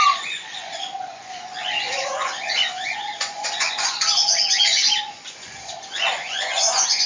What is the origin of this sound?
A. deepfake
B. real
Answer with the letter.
A